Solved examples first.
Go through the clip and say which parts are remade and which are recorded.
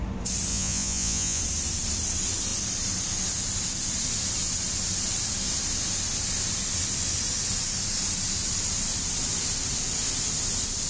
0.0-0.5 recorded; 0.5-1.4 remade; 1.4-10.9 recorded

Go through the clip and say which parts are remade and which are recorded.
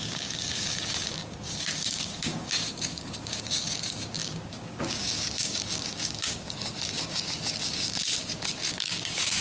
0.0-9.4 remade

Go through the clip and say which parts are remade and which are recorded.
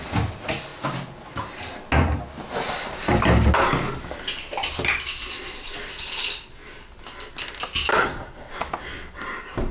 0.0-7.9 recorded; 7.9-8.5 remade; 8.5-9.7 recorded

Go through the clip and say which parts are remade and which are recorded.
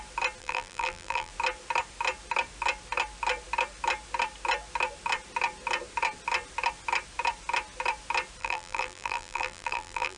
0.0-0.4 recorded; 0.4-1.3 remade; 1.3-8.4 recorded; 8.4-10.2 remade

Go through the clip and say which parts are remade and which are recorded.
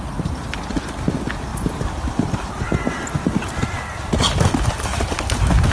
0.0-5.7 recorded